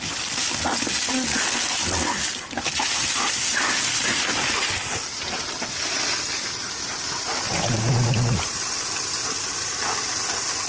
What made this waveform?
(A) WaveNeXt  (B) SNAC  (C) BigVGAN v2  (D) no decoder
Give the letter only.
D